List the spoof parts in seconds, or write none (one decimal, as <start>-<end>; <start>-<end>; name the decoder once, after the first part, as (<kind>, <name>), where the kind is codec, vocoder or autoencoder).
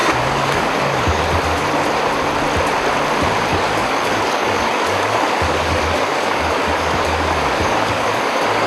0.0-1.2 (codec, DAC); 3.5-8.7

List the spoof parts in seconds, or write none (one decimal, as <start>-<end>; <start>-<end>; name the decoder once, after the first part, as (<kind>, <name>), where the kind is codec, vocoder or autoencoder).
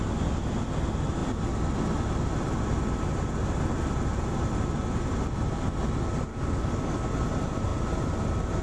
6.3-7.1 (codec, DAC)